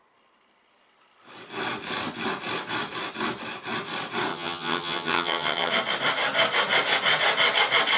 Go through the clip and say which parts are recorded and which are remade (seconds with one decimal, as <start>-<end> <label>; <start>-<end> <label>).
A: 0.0-4.3 recorded; 4.3-5.7 remade; 5.7-8.0 recorded